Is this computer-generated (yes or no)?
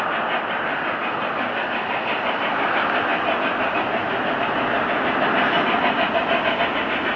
no